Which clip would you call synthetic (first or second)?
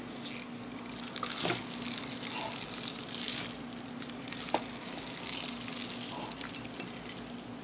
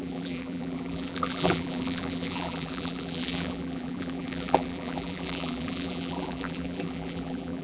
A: second